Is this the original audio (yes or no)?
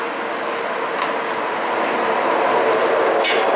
yes